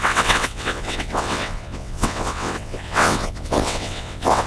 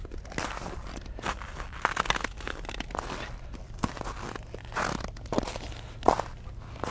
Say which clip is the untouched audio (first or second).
second